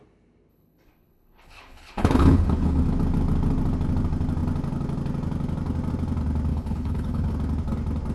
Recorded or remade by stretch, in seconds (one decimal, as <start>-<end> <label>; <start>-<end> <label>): 0.0-0.5 recorded; 0.5-2.8 remade; 2.8-6.5 recorded; 6.5-7.3 remade; 7.3-8.1 recorded